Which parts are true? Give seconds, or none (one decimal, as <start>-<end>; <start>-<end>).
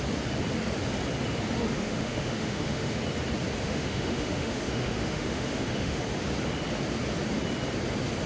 0.0-1.7; 3.0-3.6; 6.0-8.3